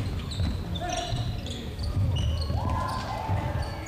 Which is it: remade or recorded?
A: recorded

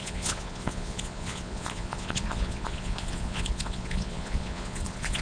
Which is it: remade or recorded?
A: remade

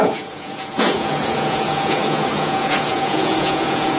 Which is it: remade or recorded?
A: remade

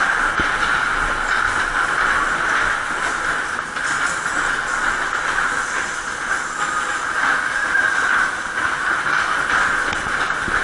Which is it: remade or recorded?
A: recorded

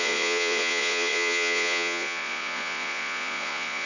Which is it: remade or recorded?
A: remade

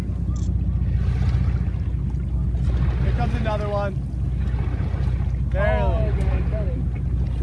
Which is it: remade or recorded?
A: recorded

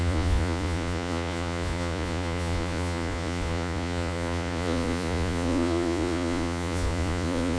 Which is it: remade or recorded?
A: remade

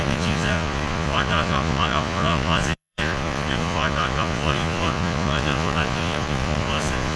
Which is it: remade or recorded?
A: remade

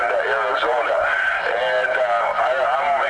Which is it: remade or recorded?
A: recorded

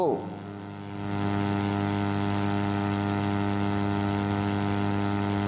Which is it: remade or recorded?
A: recorded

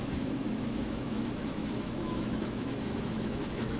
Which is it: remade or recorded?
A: remade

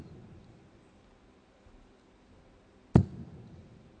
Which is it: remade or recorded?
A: recorded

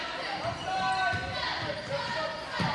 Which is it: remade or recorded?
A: recorded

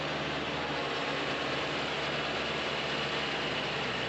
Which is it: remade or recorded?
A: recorded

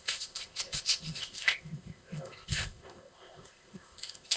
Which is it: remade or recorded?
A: remade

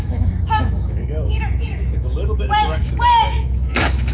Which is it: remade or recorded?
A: remade